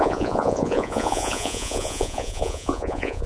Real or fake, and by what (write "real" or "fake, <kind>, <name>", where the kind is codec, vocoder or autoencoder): fake, vocoder, Vocos